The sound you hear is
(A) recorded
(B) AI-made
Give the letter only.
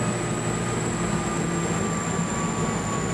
A